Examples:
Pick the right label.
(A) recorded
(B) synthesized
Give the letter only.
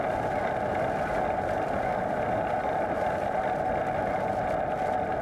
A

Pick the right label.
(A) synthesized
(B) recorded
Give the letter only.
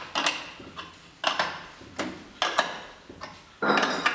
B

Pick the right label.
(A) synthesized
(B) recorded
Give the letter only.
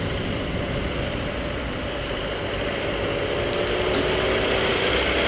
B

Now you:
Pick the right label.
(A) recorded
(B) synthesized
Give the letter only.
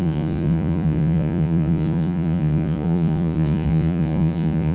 B